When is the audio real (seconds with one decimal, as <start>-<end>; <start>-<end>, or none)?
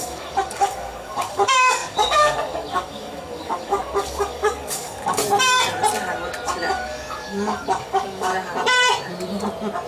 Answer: 5.2-6.7; 8.3-9.9